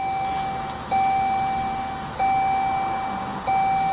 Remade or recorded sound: recorded